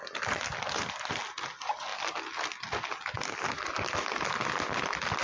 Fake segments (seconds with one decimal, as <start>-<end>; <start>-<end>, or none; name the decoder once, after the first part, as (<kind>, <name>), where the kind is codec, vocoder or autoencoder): none